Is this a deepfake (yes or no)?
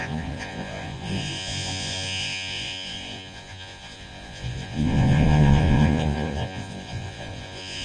yes